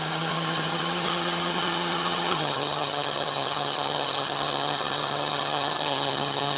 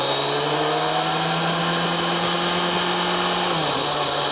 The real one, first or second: second